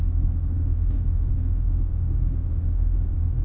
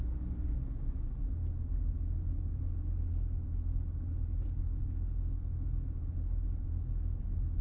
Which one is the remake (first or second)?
first